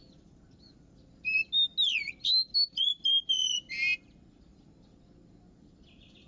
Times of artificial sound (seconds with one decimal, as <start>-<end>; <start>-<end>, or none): none